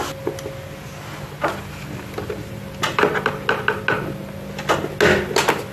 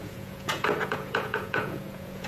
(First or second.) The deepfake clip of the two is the second